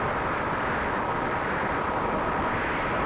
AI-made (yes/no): no